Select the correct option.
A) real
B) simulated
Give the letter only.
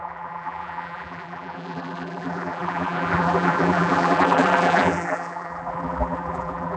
B